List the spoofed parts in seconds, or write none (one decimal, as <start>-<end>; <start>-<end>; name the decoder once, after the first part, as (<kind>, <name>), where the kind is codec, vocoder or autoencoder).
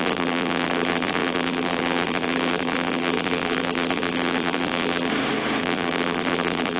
0.0-5.1 (vocoder, BigVGAN v2); 5.6-6.8